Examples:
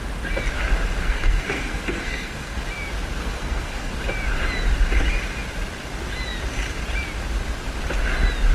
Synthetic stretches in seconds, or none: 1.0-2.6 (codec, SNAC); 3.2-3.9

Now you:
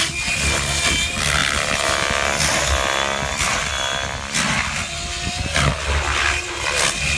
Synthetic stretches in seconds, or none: none